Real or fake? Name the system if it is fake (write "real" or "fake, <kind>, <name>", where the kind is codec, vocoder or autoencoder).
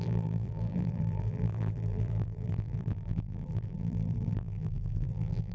fake, vocoder, BigVGAN v2